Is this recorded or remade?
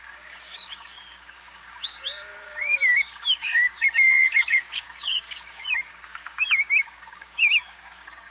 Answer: remade